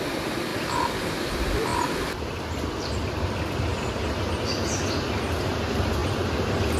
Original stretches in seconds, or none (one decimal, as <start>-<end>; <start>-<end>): 0.0-1.7; 2.4-6.8